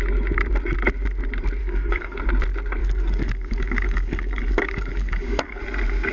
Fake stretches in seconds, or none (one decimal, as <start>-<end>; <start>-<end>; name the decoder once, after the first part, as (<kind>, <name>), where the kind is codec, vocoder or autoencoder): 1.6-2.2 (codec, DAC); 2.8-5.6